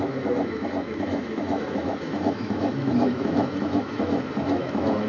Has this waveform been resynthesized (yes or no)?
yes